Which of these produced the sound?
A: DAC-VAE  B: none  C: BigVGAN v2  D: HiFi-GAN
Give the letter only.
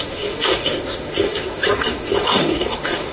A